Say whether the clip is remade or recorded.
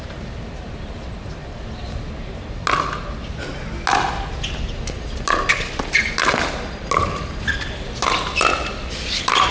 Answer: recorded